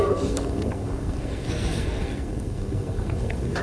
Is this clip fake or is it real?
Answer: fake